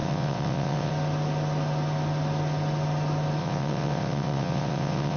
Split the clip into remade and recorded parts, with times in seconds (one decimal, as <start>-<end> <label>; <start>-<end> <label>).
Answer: 0.0-0.9 remade; 0.9-3.4 recorded; 3.4-5.2 remade